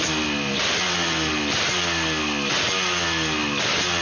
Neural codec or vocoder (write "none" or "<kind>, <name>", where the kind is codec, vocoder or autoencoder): none